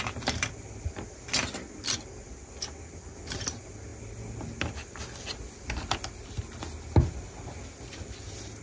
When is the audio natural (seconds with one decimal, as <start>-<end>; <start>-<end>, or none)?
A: 0.0-8.6